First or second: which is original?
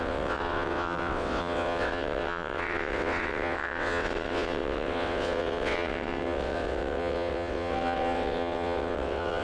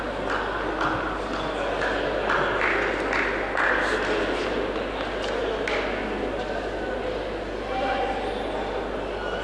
second